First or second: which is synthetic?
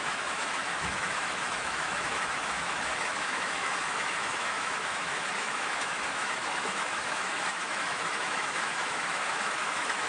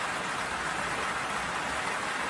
first